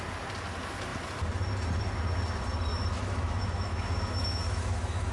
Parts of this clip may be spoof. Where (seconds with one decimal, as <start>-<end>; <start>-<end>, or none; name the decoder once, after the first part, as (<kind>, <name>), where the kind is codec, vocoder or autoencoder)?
2.7-5.1 (autoencoder, DAC-VAE)